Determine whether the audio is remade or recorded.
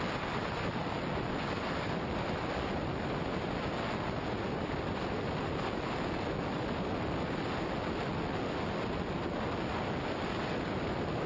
recorded